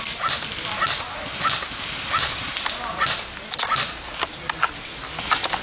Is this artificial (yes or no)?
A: no